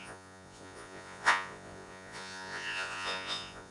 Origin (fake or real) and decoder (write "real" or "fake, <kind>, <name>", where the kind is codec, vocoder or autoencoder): fake, vocoder, Vocos